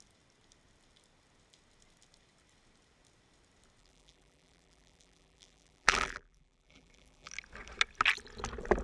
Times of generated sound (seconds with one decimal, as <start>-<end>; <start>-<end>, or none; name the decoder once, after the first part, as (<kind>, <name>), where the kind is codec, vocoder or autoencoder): 3.8-7.3 (vocoder, BigVGAN v2)